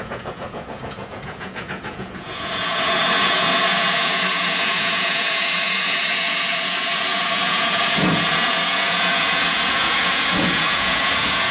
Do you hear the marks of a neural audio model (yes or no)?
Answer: yes